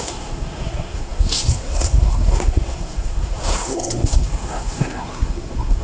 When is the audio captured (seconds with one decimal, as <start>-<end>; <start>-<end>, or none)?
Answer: none